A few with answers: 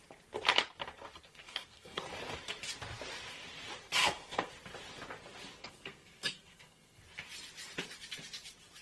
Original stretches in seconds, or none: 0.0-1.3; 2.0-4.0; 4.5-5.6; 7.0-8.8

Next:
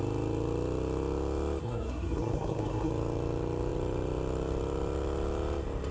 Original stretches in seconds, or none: 0.0-1.6; 2.9-5.9

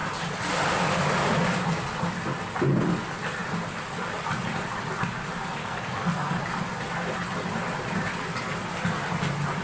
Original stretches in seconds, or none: 0.0-5.6; 6.4-9.6

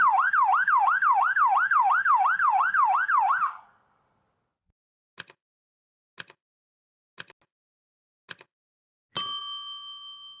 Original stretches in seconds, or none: 0.0-10.4